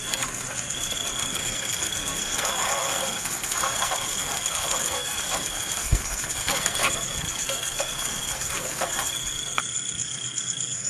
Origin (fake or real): fake